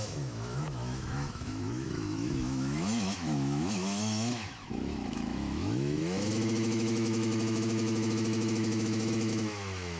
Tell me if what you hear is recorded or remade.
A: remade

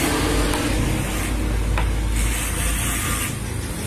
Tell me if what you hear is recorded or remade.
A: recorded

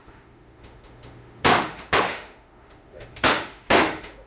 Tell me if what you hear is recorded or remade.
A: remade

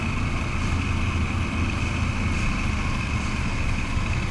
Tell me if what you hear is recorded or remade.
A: recorded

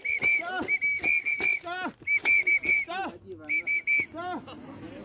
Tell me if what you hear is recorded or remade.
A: recorded